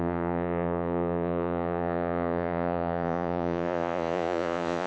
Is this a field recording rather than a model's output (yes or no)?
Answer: no